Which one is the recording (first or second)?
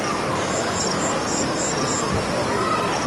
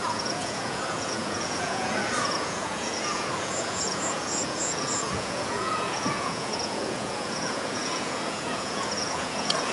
first